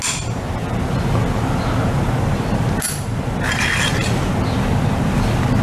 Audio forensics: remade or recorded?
recorded